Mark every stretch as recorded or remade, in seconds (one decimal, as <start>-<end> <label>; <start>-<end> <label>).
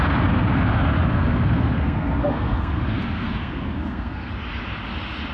0.0-1.1 recorded; 1.1-4.3 remade; 4.3-5.3 recorded